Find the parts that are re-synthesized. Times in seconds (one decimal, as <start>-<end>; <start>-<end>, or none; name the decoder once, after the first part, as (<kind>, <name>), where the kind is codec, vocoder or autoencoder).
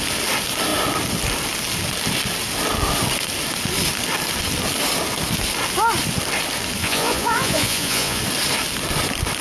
6.8-8.2 (vocoder, Vocos)